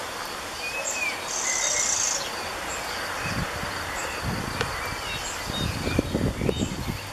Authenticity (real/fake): real